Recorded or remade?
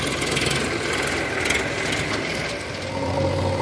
recorded